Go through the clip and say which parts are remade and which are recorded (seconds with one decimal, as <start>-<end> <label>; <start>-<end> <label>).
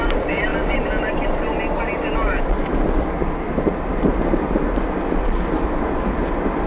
0.0-0.5 remade; 0.5-2.8 recorded; 2.8-6.7 remade